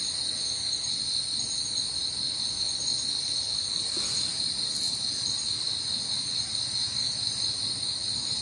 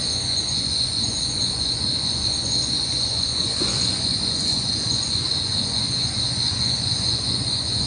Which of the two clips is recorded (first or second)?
first